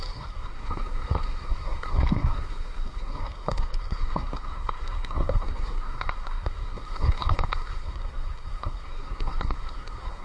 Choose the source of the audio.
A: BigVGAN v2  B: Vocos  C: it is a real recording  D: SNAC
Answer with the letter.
D